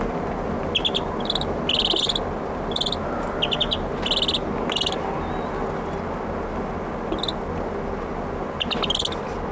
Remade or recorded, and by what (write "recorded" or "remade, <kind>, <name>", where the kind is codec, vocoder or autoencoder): recorded